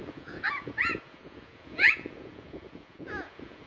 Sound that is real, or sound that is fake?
fake